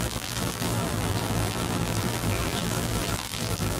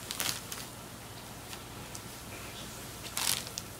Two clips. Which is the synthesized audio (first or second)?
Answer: first